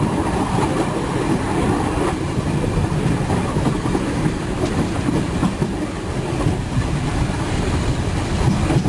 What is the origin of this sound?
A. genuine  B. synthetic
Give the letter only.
A